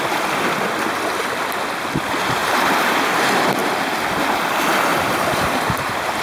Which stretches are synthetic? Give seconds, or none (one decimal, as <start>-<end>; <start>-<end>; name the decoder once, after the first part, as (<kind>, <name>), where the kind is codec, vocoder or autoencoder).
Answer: 2.4-3.0 (vocoder, BigVGAN v2); 4.9-6.2